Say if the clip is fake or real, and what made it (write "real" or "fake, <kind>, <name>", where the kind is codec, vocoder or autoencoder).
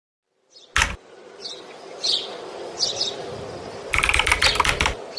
real